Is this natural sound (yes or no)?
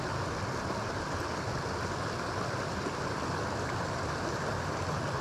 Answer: yes